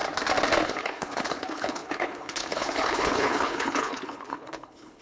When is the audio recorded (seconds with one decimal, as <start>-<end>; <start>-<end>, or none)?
0.0-0.6